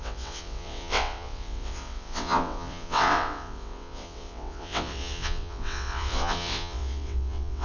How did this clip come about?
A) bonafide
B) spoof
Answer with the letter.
B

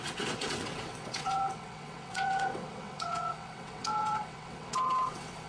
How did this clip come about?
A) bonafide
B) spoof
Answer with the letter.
B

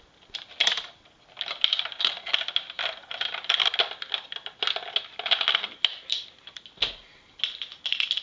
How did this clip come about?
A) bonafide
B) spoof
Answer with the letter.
A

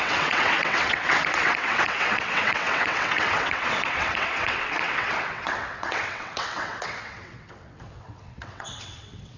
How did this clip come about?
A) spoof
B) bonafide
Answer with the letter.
A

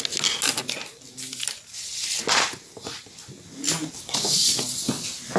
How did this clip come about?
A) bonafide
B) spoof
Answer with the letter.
A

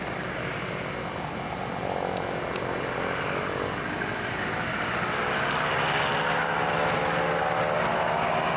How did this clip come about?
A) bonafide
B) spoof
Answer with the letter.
A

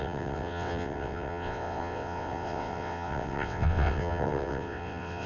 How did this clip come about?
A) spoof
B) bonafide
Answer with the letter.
A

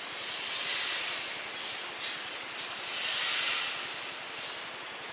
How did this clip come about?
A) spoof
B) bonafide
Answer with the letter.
B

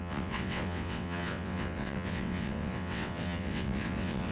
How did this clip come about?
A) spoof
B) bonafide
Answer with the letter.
A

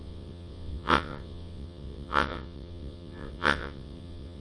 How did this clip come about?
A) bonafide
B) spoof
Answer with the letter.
B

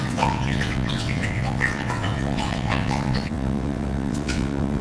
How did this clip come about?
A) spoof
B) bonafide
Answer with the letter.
A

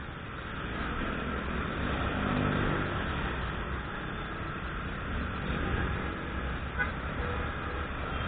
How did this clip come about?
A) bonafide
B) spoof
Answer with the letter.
A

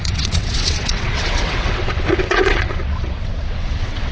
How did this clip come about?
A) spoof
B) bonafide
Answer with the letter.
A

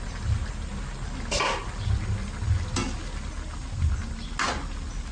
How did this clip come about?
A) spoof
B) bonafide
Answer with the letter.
B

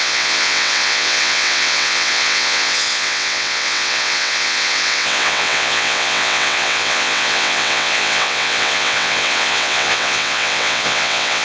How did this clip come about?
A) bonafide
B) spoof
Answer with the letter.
B